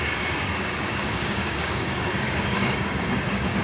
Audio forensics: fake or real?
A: fake